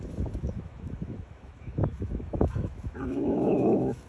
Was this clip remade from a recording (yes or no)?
yes